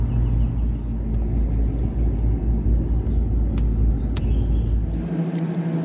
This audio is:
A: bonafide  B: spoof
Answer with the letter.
A